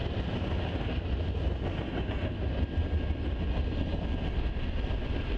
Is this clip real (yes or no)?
yes